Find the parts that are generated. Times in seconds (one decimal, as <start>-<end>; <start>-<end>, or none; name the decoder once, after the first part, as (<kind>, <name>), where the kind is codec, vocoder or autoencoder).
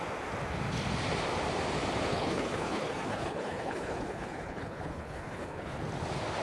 2.1-5.8 (codec, HILCodec)